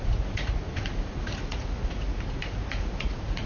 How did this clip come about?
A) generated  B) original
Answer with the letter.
A